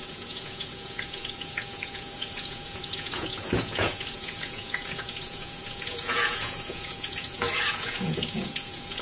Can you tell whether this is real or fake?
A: fake